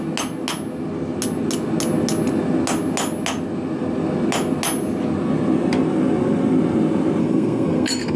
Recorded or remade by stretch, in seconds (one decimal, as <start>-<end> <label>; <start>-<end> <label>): 0.0-7.2 recorded; 7.2-8.2 remade